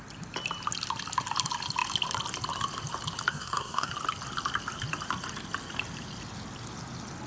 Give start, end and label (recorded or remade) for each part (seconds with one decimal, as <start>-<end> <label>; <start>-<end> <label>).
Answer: 0.0-3.3 recorded; 3.3-3.9 remade; 3.9-7.3 recorded

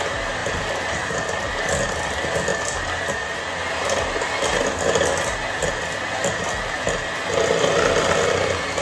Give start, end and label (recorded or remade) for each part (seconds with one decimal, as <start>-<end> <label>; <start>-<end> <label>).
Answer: 0.0-0.4 recorded; 0.4-1.6 remade; 1.6-8.8 recorded

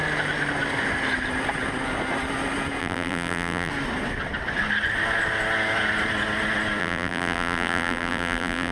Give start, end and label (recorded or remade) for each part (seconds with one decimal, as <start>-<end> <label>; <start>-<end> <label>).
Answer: 0.0-2.8 recorded; 2.8-3.7 remade; 3.7-6.8 recorded; 6.8-8.7 remade

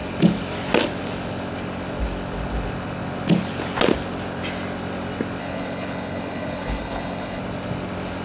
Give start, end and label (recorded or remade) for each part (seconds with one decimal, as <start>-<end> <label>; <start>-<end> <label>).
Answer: 0.0-5.4 recorded; 5.4-7.4 remade; 7.4-8.2 recorded

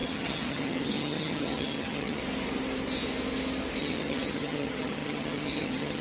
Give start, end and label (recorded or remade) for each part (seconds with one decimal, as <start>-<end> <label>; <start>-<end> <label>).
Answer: 0.0-2.2 remade; 2.2-3.8 recorded; 3.8-6.0 remade